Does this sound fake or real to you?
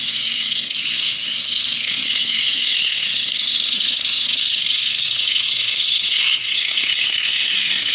fake